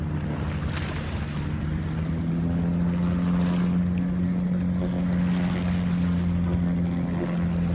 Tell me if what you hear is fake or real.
real